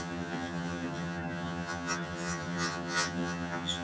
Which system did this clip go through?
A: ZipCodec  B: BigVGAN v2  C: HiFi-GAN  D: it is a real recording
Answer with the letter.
C